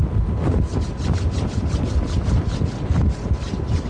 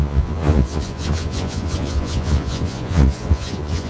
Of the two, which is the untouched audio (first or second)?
first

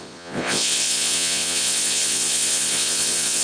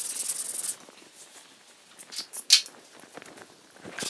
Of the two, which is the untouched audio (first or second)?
second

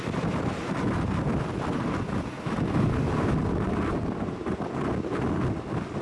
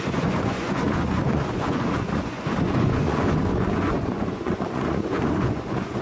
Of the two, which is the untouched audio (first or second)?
first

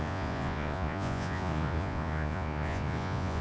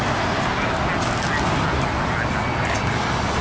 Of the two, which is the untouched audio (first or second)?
second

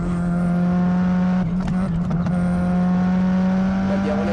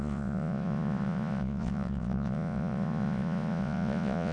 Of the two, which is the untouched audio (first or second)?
first